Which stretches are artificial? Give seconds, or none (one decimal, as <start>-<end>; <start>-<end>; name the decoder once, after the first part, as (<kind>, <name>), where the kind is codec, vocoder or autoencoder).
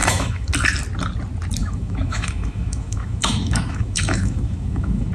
0.0-0.5 (autoencoder, DAC-VAE); 1.6-5.1